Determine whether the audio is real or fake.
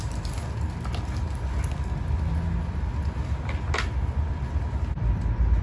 real